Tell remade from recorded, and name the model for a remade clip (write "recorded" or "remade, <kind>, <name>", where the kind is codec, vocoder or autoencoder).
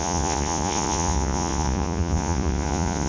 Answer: remade, vocoder, Vocos